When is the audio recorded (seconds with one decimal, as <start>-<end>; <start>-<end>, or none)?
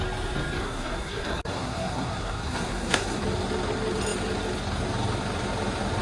0.0-0.6; 3.2-6.0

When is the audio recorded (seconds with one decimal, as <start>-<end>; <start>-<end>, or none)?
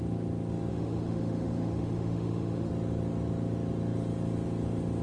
0.0-0.7; 2.7-5.0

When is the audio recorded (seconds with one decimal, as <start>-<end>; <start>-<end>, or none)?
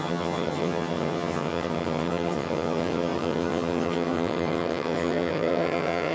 none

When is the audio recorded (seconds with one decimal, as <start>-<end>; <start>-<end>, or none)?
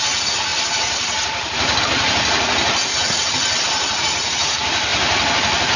0.0-2.9; 3.6-5.8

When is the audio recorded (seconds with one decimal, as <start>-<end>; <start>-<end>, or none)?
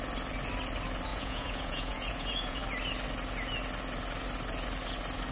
0.0-1.1; 2.6-5.3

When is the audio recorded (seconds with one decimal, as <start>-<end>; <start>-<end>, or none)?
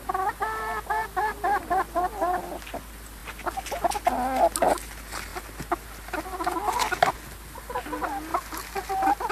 0.0-9.3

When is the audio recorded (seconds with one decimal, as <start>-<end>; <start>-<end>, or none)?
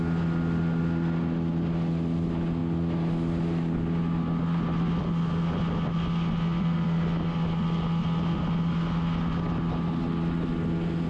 0.0-11.1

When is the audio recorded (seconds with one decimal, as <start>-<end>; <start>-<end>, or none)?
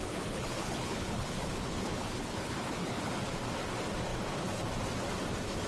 3.1-5.7